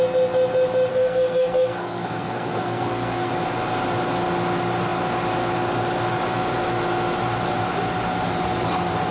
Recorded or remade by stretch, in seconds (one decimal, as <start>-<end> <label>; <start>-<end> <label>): 0.0-0.9 recorded; 0.9-3.3 remade; 3.3-9.1 recorded